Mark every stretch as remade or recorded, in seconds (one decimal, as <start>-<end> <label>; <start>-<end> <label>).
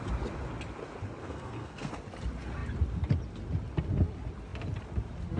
0.0-1.2 recorded; 1.2-1.9 remade; 1.9-5.4 recorded